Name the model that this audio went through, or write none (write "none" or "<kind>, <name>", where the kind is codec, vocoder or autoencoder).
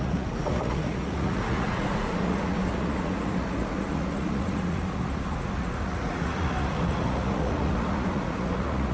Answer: vocoder, Vocos